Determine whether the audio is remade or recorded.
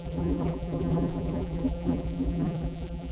remade